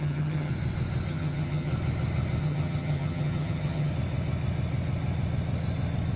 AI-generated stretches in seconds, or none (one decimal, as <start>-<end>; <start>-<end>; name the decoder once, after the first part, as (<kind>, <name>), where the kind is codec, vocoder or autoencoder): 0.0-0.5 (vocoder, HiFi-GAN); 1.1-1.7; 2.4-3.9